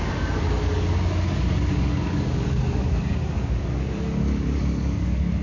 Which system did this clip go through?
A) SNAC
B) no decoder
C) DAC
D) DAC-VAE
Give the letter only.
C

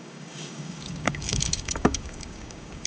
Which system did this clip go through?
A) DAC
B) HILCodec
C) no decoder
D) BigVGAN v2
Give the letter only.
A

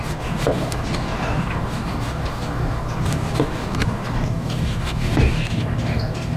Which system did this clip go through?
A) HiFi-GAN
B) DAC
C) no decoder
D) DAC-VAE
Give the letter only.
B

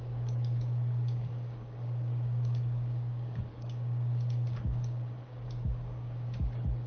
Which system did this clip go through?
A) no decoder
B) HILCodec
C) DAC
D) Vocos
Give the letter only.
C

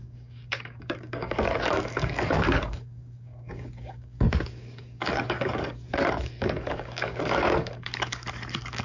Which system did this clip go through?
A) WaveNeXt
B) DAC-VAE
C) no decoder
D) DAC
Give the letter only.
D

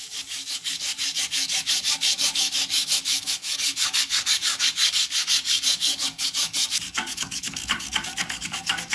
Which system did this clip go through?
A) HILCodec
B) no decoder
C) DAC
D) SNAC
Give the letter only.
C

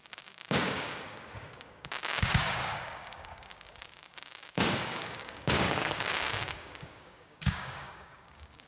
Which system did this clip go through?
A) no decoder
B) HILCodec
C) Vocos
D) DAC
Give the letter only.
D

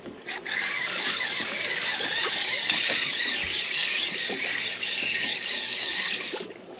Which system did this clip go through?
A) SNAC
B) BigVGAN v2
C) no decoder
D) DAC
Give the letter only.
D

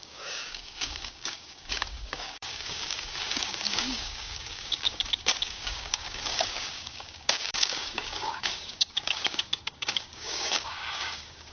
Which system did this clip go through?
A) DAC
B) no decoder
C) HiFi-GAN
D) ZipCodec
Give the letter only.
A